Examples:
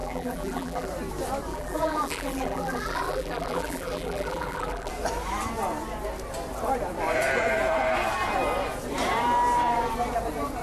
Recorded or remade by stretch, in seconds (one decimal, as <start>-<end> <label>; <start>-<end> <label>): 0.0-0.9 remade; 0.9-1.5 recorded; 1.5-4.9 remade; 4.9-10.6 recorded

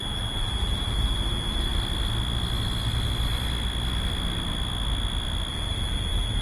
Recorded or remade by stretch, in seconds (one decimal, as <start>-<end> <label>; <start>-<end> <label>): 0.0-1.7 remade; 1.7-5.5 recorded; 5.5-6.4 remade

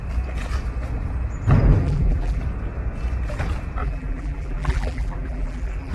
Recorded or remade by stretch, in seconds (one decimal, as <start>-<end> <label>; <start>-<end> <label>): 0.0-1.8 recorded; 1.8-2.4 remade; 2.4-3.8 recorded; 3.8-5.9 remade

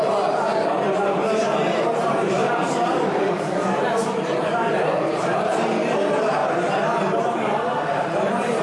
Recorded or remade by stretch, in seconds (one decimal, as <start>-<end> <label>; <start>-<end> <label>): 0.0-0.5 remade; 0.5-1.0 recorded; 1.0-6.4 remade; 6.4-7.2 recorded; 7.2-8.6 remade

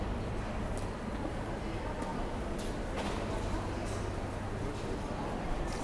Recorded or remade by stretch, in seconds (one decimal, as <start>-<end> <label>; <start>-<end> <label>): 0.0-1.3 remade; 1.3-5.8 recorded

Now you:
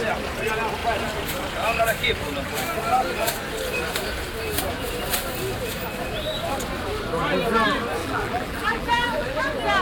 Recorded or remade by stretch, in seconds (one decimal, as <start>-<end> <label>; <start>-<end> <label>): 0.0-8.0 recorded; 8.0-9.4 remade; 9.4-9.8 recorded